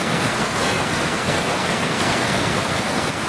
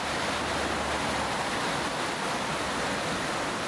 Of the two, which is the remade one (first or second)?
first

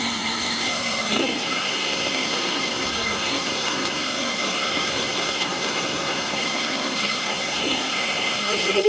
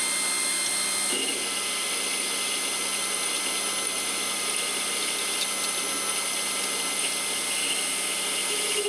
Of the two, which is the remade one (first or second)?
first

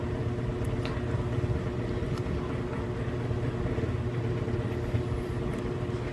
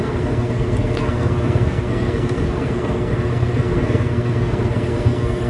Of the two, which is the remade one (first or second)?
second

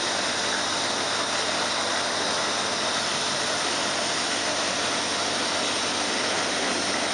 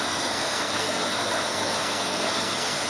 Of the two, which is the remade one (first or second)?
second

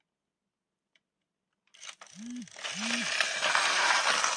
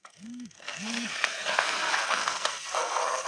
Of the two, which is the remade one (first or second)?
second